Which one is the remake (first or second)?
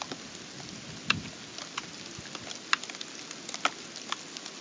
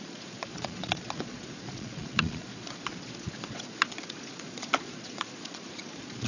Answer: second